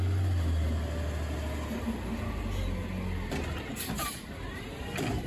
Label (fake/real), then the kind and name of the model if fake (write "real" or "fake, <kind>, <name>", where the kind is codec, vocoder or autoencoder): real